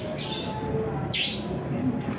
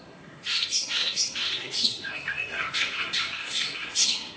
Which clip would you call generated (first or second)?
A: second